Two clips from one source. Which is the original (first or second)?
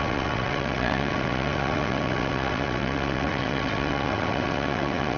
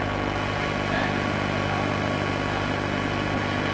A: second